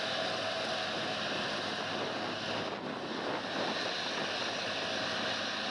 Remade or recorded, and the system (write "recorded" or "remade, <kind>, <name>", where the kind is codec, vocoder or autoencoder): recorded